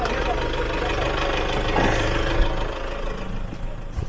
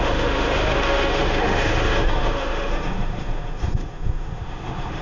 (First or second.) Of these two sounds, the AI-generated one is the second